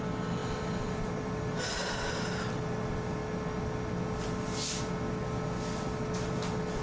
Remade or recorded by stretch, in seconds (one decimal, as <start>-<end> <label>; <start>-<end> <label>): 0.0-3.2 remade; 3.2-6.3 recorded; 6.3-6.8 remade